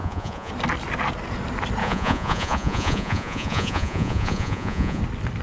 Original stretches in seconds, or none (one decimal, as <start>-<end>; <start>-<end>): 0.5-1.8; 5.0-5.4